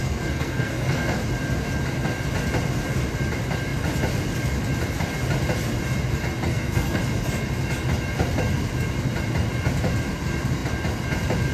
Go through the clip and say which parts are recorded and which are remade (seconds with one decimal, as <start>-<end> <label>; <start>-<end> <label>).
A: 0.0-1.2 remade; 1.2-6.5 recorded; 6.5-7.0 remade; 7.0-11.5 recorded